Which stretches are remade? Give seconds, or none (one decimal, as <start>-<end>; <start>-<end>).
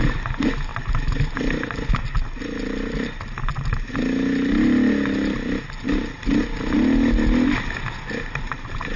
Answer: none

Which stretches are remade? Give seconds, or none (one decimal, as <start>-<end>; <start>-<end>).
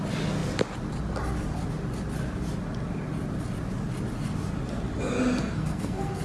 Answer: 5.4-6.2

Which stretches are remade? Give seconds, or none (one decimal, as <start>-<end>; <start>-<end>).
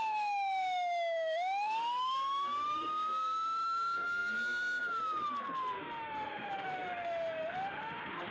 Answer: 0.0-8.3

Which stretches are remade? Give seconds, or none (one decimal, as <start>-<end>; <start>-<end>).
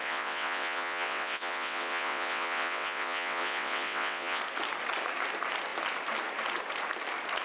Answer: 0.0-4.4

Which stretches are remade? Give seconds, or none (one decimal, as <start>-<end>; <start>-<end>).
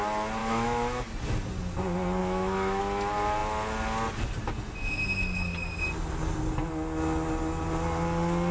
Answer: 0.4-1.0; 2.2-2.8